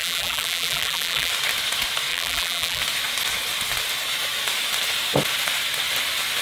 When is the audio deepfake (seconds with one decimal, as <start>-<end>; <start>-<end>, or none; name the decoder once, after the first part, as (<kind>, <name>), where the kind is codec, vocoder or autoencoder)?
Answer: 0.0-1.3 (vocoder, BigVGAN v2); 2.1-2.8